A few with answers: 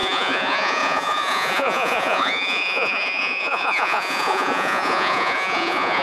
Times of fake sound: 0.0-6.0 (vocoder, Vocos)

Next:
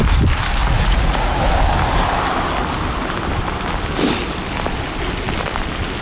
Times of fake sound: 0.6-1.4 (vocoder, Vocos)